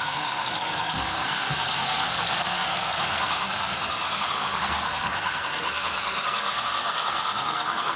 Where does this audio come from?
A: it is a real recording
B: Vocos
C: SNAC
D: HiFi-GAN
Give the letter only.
C